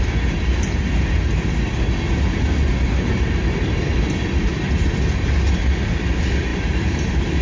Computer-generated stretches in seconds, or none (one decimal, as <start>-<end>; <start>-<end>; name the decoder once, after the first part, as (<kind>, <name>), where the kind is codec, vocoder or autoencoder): 6.5-7.4 (vocoder, BigVGAN v2)